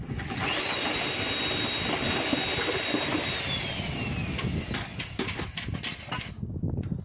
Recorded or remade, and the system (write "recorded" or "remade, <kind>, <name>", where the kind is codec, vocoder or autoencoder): recorded